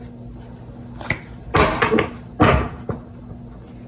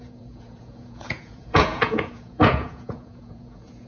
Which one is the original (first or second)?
first